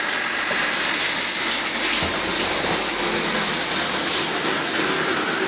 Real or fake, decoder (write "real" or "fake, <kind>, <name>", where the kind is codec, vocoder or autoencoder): real